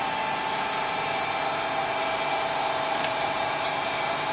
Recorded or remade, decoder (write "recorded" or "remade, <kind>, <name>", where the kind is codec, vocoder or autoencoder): recorded